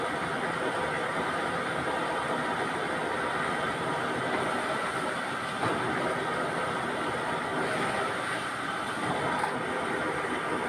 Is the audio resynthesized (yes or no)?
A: no